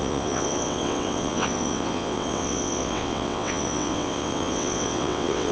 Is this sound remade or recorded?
remade